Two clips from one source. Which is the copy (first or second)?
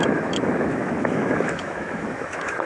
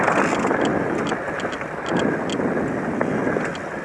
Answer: first